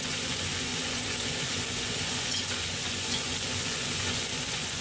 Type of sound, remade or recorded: remade